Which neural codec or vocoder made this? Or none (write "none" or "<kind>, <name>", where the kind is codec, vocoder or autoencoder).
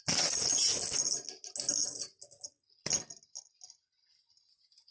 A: none